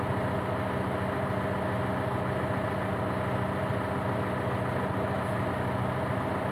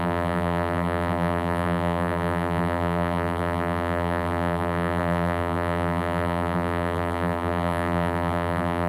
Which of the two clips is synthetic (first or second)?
second